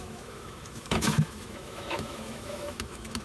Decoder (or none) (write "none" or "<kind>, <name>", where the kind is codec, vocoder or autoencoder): autoencoder, DAC-VAE